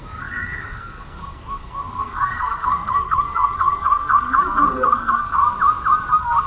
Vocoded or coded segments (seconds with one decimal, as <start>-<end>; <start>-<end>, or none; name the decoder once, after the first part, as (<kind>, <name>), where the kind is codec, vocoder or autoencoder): 0.0-5.4 (codec, SNAC); 6.1-6.5